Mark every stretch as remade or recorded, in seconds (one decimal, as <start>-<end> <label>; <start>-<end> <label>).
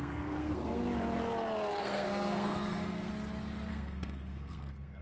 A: 0.0-0.8 remade; 0.8-1.8 recorded; 1.8-3.1 remade; 3.1-3.7 recorded; 3.7-5.0 remade